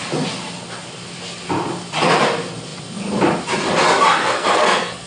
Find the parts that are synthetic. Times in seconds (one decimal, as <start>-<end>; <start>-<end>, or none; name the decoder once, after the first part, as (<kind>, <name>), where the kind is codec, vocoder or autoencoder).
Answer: 4.2-5.1 (codec, SNAC)